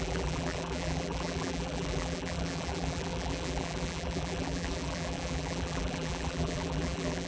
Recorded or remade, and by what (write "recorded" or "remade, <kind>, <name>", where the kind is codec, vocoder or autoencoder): remade, vocoder, BigVGAN v2